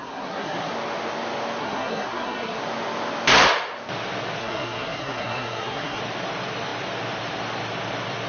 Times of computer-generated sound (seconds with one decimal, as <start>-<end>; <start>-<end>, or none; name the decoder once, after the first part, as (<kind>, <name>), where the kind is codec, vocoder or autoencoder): 0.0-0.7 (codec, SNAC); 1.6-2.6; 4.4-6.0